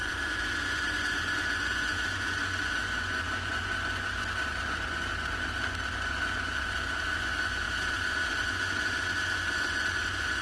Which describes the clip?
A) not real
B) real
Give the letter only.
A